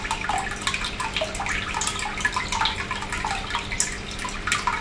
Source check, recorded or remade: recorded